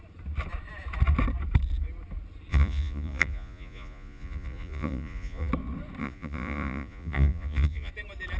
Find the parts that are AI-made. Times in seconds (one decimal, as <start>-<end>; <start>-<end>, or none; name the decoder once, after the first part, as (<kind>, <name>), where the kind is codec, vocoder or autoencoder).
2.5-5.5 (vocoder, Vocos); 6.0-7.9